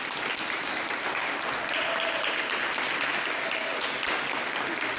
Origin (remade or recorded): recorded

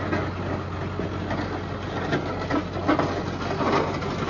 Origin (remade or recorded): recorded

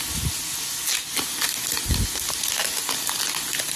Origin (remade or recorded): recorded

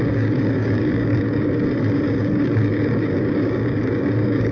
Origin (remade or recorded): remade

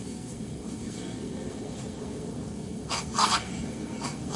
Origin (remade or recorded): remade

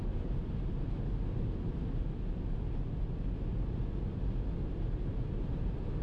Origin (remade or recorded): recorded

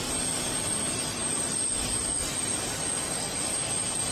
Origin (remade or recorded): recorded